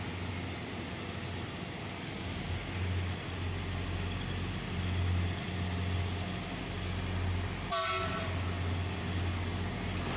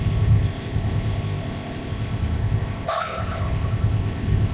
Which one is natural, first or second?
first